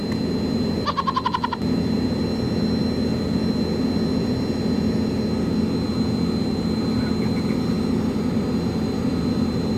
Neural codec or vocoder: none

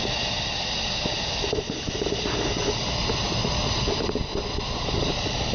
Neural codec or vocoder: none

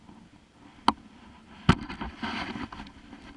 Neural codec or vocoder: none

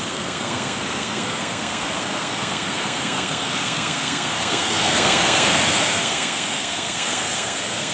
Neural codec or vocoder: codec, SNAC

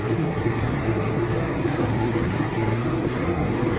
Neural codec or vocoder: codec, SNAC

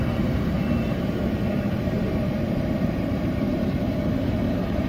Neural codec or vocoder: vocoder, BigVGAN v2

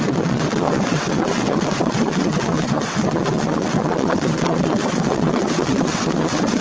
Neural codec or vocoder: vocoder, WaveNeXt